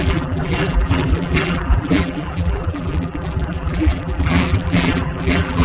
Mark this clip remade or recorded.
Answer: remade